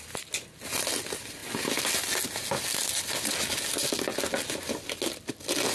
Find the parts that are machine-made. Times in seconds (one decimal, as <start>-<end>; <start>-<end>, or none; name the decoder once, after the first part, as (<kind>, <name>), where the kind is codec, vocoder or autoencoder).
none